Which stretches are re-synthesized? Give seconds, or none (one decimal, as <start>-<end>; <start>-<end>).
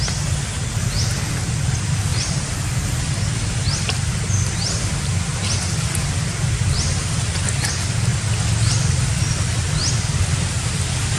none